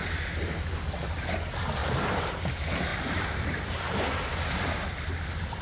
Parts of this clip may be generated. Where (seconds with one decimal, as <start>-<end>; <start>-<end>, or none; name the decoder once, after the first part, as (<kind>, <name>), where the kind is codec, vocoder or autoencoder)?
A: 1.8-2.4 (vocoder, BigVGAN v2); 2.9-4.2